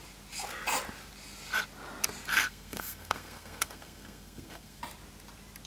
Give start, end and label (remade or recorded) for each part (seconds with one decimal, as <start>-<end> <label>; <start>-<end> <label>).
0.0-2.3 recorded; 2.3-4.8 remade; 4.8-5.7 recorded